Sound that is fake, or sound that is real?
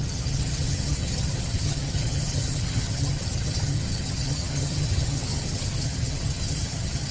fake